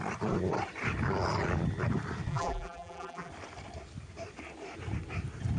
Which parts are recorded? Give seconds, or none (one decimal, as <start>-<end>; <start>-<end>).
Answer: 0.0-2.3; 3.3-5.6